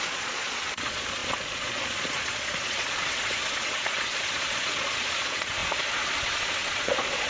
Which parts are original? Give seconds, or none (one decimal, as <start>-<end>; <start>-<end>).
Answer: none